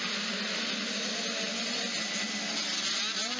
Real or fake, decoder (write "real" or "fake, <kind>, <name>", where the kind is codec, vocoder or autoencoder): real